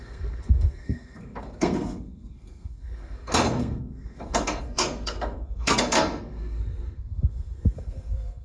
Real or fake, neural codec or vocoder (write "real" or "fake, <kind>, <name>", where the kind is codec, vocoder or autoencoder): fake, codec, SNAC